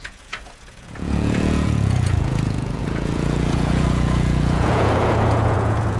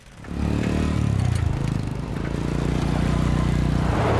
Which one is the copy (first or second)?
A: first